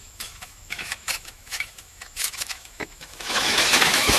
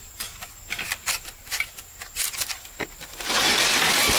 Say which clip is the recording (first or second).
second